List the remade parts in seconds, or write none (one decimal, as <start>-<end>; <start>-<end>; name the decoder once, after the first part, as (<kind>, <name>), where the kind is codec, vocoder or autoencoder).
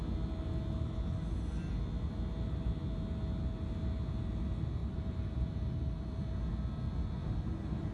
4.8-6.5 (vocoder, BigVGAN v2); 7.2-7.9